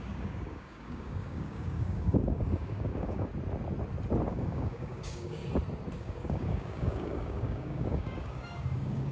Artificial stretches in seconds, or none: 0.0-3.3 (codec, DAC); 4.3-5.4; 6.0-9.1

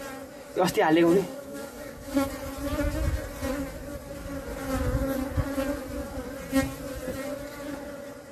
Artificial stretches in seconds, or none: 1.2-2.3 (codec, DAC)

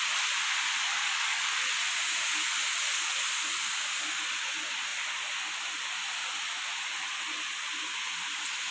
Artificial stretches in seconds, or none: 0.9-1.5 (codec, DAC)

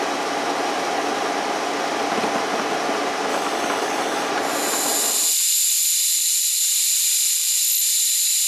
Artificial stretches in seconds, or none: 3.3-4.3 (codec, DAC)